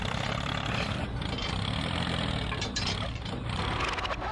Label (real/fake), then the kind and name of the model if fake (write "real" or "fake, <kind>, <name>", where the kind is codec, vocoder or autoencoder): fake, vocoder, BigVGAN v2